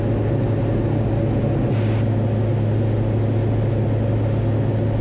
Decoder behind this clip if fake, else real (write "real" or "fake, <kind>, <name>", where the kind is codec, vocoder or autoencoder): real